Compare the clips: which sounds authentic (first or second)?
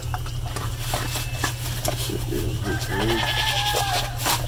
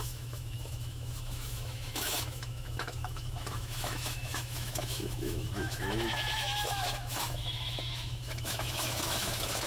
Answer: first